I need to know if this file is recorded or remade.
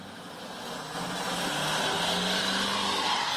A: recorded